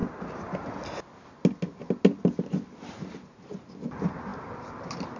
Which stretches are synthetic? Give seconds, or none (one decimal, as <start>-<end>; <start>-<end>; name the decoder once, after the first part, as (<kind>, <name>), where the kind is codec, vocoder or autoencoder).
none